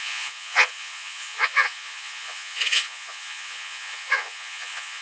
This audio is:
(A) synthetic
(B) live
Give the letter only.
A